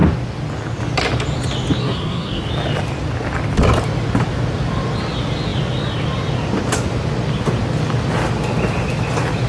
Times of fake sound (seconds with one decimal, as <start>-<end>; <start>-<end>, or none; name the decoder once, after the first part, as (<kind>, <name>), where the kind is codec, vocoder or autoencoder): 1.8-2.4 (codec, SNAC)